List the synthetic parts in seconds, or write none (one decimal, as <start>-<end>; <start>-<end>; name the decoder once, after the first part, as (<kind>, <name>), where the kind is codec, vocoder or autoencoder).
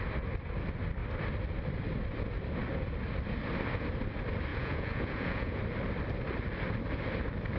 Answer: 4.5-5.6 (vocoder, Vocos)